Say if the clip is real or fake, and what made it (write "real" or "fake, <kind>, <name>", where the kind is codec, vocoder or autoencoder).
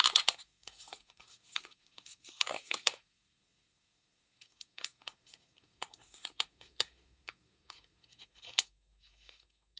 fake, codec, SNAC